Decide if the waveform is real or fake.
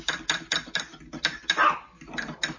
real